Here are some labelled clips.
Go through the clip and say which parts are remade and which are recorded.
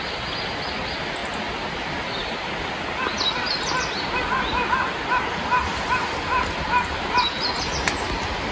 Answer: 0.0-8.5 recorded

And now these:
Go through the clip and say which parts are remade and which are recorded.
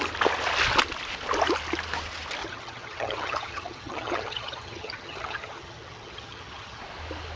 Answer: 0.0-2.4 recorded; 2.4-6.8 remade; 6.8-7.4 recorded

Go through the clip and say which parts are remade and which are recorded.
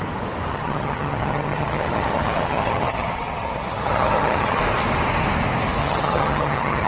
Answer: 0.0-0.5 recorded; 0.5-4.6 remade; 4.6-5.8 recorded; 5.8-6.9 remade